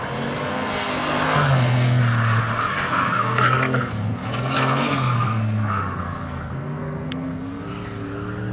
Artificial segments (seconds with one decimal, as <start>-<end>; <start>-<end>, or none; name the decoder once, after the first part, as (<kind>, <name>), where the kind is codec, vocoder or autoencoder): 0.5-2.0 (codec, SNAC); 2.7-7.7